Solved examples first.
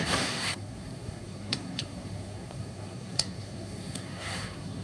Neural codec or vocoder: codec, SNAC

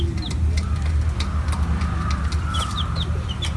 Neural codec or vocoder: none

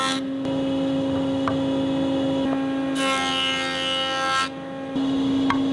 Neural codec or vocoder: none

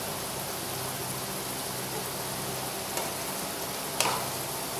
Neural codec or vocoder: none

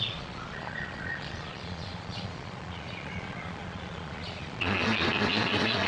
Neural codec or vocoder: vocoder, Vocos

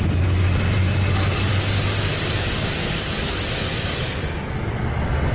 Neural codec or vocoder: none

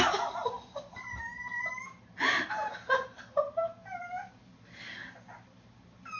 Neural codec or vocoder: none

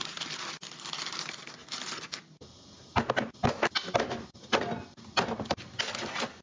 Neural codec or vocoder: none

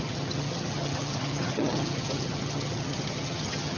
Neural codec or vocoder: vocoder, HiFi-GAN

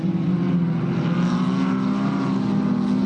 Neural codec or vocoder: none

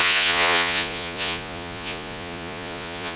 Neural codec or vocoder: vocoder, Vocos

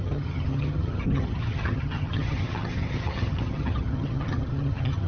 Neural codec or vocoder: vocoder, HiFi-GAN